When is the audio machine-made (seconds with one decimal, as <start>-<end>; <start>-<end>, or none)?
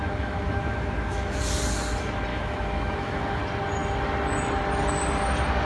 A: 0.0-1.4; 2.3-3.4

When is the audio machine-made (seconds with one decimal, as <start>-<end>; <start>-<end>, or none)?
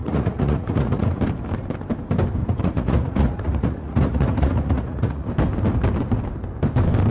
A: 0.0-1.2; 2.4-5.3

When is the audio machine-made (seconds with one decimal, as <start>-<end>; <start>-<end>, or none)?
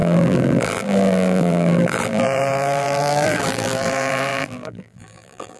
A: 0.0-5.6